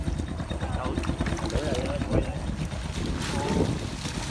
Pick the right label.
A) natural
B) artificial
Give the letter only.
A